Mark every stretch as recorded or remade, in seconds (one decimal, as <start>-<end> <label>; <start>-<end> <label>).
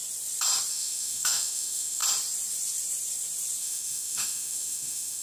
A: 0.0-0.7 recorded; 0.7-2.0 remade; 2.0-3.6 recorded; 3.6-5.2 remade